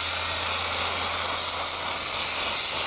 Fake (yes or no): no